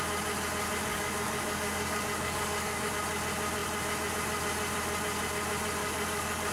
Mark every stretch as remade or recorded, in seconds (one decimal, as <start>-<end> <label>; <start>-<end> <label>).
0.0-0.9 recorded; 0.9-2.9 remade; 2.9-5.8 recorded; 5.8-6.5 remade